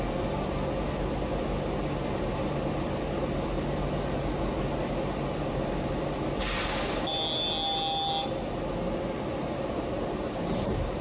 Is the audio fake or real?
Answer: real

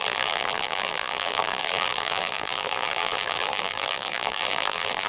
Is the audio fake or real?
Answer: fake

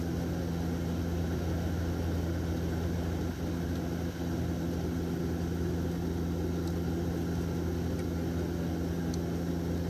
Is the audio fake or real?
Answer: real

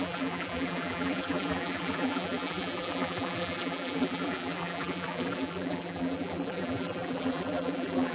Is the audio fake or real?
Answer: fake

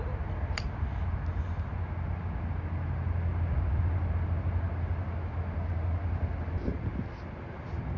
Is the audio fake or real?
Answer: real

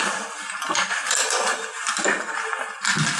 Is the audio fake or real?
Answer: real